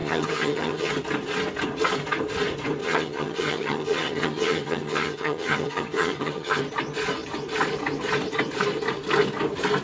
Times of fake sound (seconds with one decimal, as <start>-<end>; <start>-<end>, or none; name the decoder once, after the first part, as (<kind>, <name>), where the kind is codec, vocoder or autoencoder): 0.0-0.9 (vocoder, HiFi-GAN); 2.8-6.6